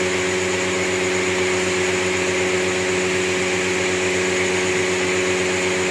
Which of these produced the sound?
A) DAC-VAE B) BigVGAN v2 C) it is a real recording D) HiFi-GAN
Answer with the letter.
C